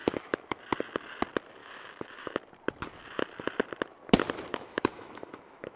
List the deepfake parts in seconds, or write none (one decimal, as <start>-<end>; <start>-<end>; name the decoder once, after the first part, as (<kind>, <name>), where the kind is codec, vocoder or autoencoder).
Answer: 0.0-0.6 (autoencoder, DAC-VAE); 1.6-2.4; 4.5-5.8